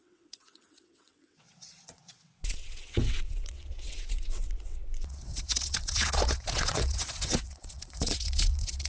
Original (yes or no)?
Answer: no